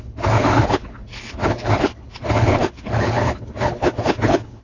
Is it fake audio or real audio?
fake